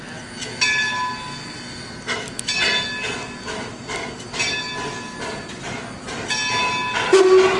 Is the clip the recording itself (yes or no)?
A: yes